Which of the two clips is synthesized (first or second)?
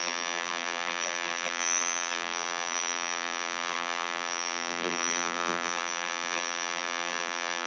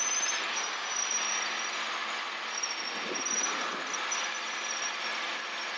first